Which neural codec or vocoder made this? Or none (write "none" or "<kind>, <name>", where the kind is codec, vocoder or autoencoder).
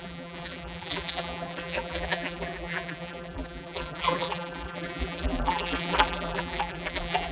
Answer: vocoder, BigVGAN v2